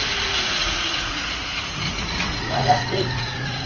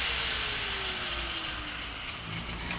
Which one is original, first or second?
second